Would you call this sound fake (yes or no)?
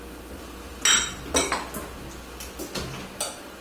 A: no